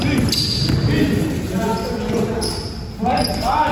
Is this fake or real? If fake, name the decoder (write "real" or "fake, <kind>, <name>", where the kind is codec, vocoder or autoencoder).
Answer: real